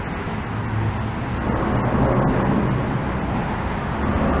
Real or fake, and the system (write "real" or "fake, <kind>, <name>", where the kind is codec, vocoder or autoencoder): real